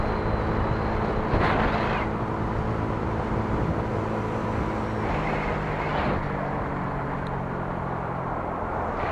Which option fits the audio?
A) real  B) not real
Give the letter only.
A